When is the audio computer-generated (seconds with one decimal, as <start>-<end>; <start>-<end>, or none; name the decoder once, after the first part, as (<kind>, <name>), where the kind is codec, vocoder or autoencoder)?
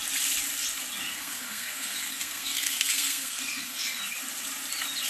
1.1-4.0 (codec, SNAC)